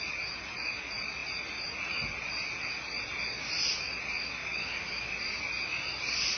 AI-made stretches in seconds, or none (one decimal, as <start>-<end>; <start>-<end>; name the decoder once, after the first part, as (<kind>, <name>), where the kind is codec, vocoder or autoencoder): 4.4-5.1 (autoencoder, DAC-VAE)